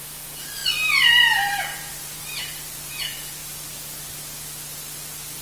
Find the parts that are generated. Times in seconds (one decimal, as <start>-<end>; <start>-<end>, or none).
0.0-0.6; 1.1-1.9; 2.9-3.4